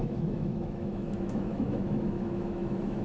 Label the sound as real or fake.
fake